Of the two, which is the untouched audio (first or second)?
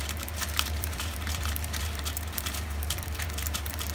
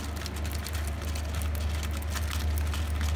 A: second